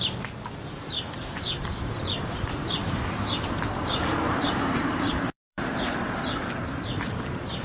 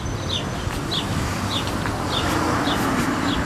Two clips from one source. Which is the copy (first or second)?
first